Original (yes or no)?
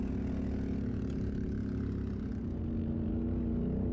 yes